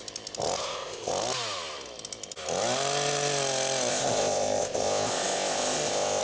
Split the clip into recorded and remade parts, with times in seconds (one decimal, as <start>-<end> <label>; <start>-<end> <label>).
0.0-0.6 recorded; 0.6-1.1 remade; 1.1-3.9 recorded; 3.9-6.2 remade